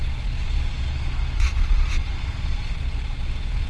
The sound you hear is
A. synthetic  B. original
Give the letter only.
A